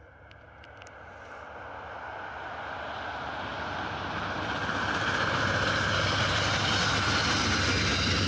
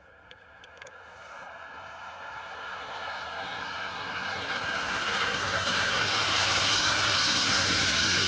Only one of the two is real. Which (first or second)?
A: first